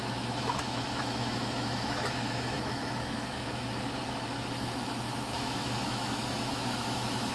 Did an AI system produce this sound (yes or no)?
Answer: yes